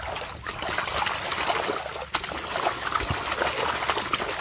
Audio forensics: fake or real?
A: real